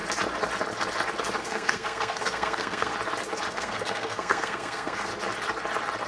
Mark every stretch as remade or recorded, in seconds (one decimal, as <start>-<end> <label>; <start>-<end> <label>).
0.0-1.4 recorded; 1.4-2.9 remade; 2.9-3.5 recorded; 3.5-5.1 remade; 5.1-6.1 recorded